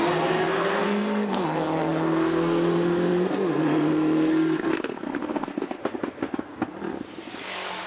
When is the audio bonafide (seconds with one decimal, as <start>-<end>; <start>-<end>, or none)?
5.8-7.9

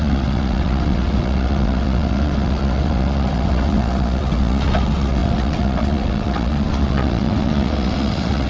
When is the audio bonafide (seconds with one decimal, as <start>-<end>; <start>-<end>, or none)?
none

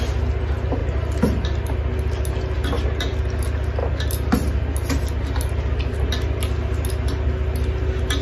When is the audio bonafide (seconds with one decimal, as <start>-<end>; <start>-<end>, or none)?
0.0-8.2

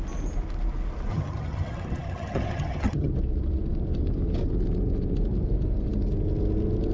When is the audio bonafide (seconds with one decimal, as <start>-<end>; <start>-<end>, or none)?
0.0-1.1; 3.1-6.9